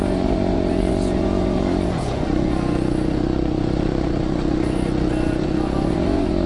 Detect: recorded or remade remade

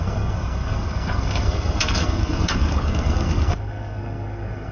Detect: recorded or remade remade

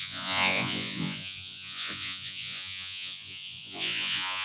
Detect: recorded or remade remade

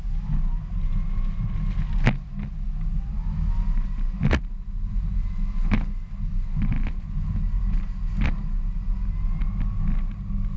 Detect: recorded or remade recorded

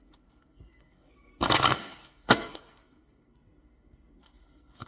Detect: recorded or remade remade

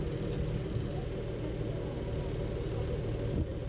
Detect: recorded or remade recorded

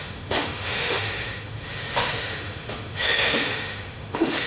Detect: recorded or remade remade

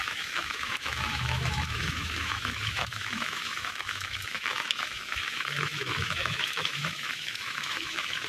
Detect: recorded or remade remade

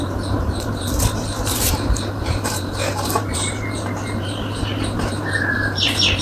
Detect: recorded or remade remade